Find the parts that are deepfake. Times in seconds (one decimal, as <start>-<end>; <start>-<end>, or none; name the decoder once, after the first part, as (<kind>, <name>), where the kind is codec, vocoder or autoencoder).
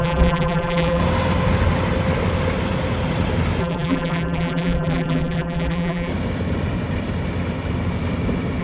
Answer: 0.0-1.0 (vocoder, BigVGAN v2); 3.6-6.1